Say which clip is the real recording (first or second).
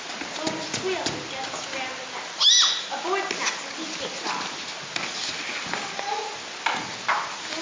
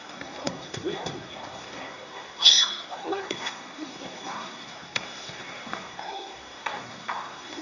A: first